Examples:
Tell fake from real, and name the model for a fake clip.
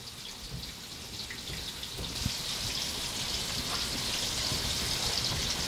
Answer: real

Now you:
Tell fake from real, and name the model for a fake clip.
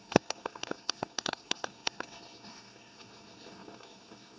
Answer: fake, codec, SNAC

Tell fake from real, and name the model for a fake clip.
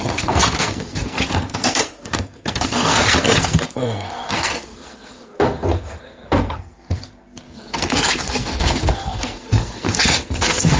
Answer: fake, codec, SNAC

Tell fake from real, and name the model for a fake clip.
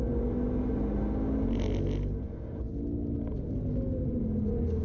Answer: real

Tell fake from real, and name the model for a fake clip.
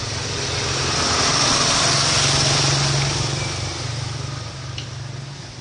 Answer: real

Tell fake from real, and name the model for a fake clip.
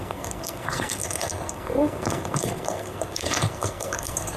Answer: fake, codec, SNAC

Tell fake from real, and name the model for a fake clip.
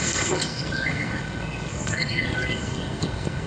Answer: fake, codec, SNAC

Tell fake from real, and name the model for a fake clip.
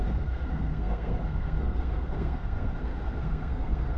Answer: fake, codec, SNAC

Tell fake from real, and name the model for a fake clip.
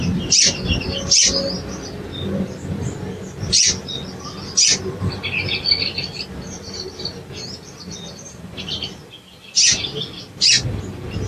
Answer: real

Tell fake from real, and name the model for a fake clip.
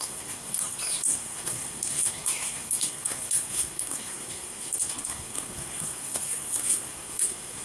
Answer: fake, codec, SNAC